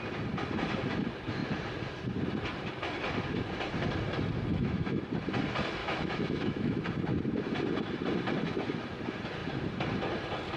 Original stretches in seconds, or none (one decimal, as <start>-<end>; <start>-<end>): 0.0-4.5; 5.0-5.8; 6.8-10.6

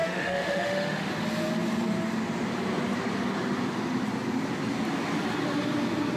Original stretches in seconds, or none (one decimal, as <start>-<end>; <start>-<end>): 1.1-6.2

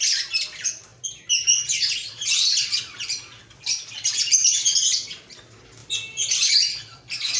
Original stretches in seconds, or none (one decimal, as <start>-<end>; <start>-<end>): 0.0-7.4

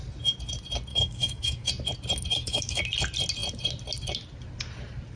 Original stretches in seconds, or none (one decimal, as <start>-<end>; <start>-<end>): 0.0-0.9; 1.7-2.3; 2.8-5.2

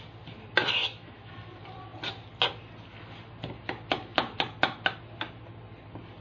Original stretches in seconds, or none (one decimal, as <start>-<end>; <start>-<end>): 0.0-0.8; 1.3-6.2